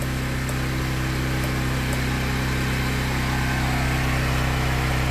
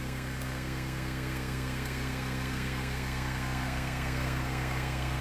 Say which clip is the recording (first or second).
first